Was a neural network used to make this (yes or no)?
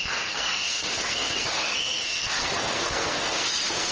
yes